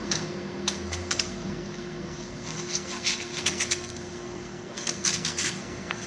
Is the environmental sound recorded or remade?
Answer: remade